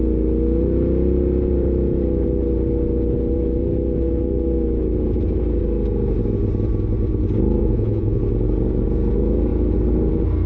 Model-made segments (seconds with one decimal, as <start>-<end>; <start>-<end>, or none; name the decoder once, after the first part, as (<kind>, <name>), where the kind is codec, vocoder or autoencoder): 7.6-8.2 (vocoder, Vocos)